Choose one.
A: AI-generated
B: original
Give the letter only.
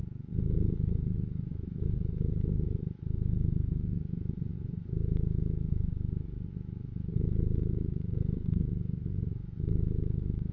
A